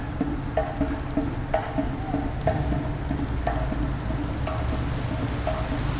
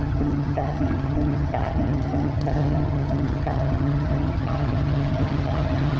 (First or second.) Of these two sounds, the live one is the first